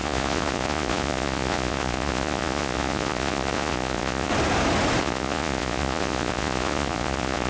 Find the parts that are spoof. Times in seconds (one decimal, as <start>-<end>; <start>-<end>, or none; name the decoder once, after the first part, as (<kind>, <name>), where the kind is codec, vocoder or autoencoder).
0.0-4.3 (vocoder, Vocos); 5.0-7.5